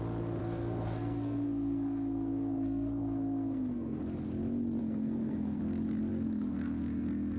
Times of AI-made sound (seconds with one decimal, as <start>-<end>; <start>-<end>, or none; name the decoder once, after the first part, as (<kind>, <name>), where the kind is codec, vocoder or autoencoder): 0.4-4.0 (codec, SNAC); 4.8-5.6; 6.1-7.4